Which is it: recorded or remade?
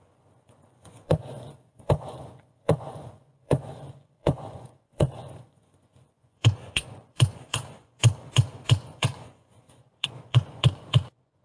remade